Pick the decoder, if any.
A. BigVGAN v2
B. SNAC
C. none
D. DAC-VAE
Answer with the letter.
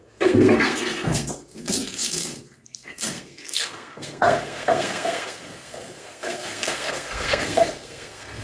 B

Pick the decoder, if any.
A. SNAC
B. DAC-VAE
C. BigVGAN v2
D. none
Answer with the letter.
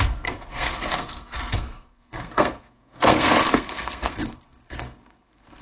A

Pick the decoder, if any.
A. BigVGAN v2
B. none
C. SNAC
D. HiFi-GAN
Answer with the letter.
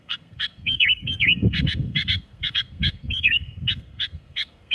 C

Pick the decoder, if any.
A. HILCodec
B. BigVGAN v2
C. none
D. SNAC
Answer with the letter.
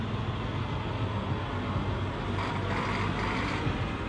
C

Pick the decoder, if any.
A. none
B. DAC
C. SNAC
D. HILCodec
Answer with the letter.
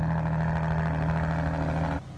A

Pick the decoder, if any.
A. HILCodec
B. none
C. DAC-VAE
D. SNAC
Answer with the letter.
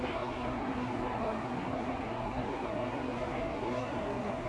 D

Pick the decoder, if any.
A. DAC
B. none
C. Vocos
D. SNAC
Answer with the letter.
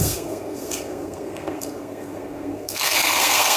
D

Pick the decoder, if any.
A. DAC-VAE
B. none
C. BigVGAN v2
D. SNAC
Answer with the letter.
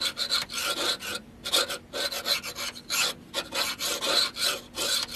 B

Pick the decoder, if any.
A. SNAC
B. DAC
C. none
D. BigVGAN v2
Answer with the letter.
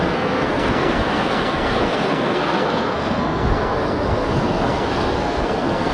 A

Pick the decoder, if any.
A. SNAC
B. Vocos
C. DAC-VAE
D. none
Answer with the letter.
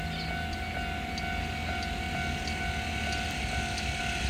D